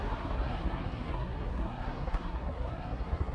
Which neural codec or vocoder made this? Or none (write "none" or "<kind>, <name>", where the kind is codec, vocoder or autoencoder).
codec, SNAC